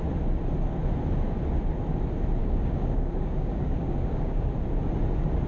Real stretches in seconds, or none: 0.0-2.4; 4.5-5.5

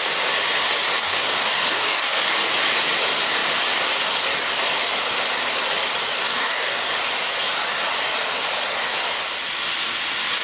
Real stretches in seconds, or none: 0.0-1.0; 2.3-6.2; 6.9-10.4

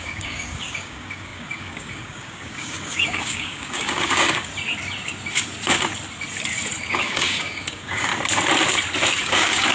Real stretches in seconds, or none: 4.5-6.9; 8.1-9.2

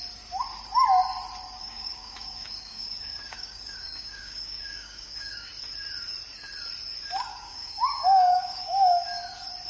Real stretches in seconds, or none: 0.0-1.6; 5.5-7.3; 9.2-9.7